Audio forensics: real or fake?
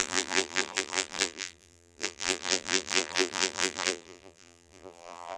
fake